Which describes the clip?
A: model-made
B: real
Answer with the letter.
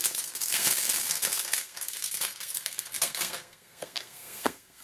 A